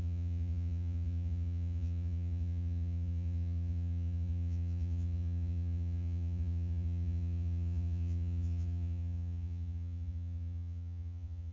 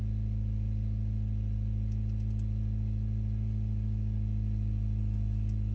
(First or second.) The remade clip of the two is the first